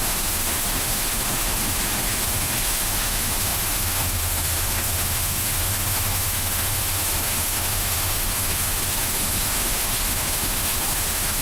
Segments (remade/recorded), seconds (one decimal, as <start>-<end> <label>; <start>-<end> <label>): 0.0-11.4 remade